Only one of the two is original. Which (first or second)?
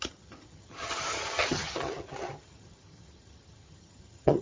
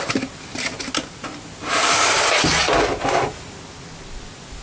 second